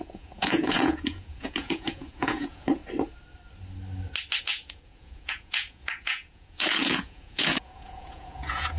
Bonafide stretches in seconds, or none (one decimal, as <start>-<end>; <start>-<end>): 2.8-4.4